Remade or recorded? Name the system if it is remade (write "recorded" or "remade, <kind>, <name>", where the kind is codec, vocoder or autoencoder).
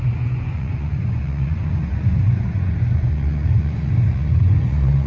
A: remade, vocoder, Vocos